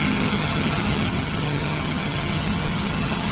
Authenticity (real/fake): fake